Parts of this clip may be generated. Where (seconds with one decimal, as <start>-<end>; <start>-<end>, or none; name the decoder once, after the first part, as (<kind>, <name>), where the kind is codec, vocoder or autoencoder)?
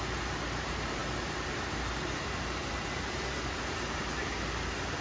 0.0-5.0 (vocoder, BigVGAN v2)